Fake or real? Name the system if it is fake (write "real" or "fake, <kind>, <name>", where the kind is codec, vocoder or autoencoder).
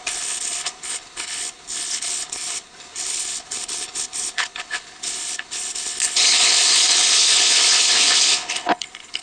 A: fake, codec, HILCodec